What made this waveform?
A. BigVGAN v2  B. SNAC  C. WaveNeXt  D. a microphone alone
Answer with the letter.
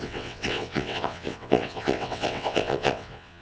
C